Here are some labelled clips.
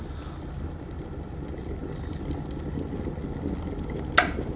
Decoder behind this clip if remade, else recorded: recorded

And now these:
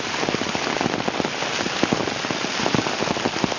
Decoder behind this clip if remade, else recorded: recorded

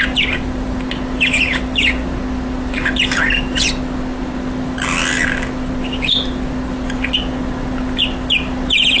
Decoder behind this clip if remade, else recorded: recorded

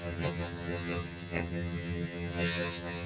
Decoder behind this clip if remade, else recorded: remade, vocoder, HiFi-GAN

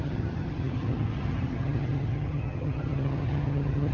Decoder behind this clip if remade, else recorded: remade, vocoder, HiFi-GAN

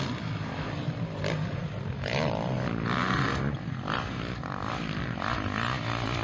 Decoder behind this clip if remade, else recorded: recorded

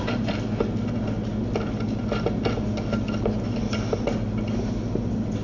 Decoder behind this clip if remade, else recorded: recorded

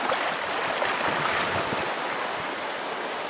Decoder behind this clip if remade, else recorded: recorded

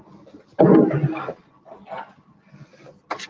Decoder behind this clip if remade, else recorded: recorded